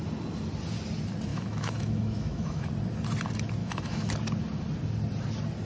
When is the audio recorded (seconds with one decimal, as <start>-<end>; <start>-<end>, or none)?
0.0-1.3; 2.7-3.6; 4.1-5.7